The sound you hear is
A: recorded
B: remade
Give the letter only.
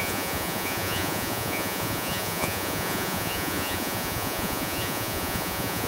B